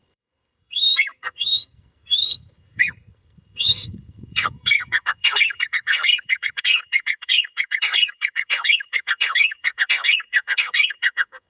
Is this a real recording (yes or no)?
no